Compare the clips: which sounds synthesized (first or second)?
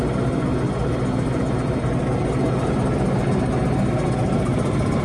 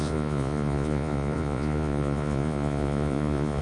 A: second